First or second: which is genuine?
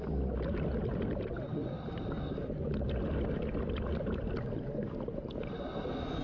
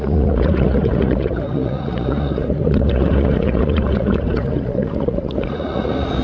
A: first